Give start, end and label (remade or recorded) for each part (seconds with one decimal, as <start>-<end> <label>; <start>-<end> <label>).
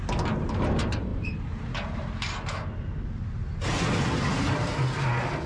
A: 0.0-5.5 recorded